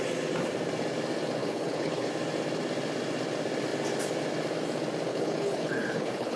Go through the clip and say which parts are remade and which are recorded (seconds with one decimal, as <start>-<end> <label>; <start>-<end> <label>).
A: 0.0-1.4 recorded; 1.4-2.1 remade; 2.1-5.1 recorded; 5.1-6.4 remade

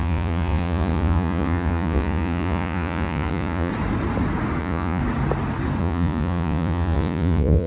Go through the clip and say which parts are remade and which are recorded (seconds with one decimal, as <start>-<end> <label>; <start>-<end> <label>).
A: 0.0-3.7 remade; 3.7-4.6 recorded; 4.6-5.0 remade; 5.0-5.8 recorded; 5.8-7.7 remade

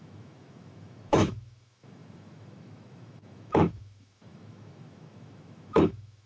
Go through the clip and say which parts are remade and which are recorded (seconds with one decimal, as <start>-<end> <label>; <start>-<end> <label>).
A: 0.0-6.3 remade

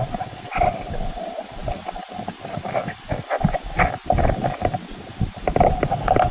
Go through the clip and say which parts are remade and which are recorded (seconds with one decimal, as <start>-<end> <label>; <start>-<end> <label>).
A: 0.0-6.3 recorded

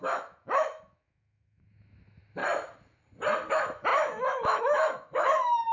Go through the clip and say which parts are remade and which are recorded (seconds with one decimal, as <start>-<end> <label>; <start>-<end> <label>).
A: 0.0-2.4 remade; 2.4-3.5 recorded; 3.5-5.7 remade